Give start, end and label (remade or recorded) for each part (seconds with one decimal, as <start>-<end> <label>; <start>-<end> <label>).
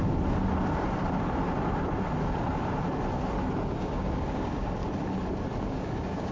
0.0-3.7 recorded; 3.7-4.8 remade; 4.8-5.6 recorded; 5.6-6.3 remade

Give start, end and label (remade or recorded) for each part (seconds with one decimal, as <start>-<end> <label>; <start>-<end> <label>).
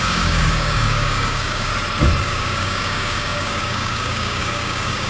0.0-1.7 remade; 1.7-2.2 recorded; 2.2-5.1 remade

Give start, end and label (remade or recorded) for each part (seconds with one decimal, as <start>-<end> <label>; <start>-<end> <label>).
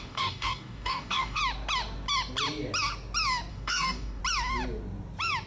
0.0-1.4 remade; 1.4-3.5 recorded; 3.5-4.2 remade; 4.2-5.5 recorded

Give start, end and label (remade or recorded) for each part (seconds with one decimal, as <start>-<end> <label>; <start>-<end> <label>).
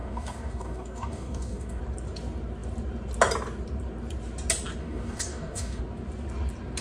0.0-1.8 remade; 1.8-4.8 recorded; 4.8-5.8 remade; 5.8-6.8 recorded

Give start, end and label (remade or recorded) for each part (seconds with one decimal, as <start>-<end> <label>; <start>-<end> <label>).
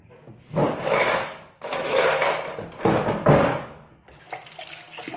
0.0-0.6 recorded; 0.6-1.6 remade; 1.6-3.5 recorded; 3.5-4.1 remade; 4.1-5.2 recorded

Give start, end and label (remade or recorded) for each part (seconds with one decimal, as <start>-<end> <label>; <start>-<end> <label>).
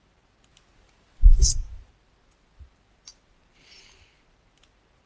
0.0-5.1 recorded